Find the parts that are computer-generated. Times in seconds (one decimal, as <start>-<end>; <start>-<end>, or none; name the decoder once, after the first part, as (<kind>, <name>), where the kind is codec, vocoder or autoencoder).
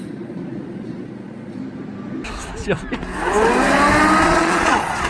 0.0-1.6 (vocoder, Vocos); 4.2-5.1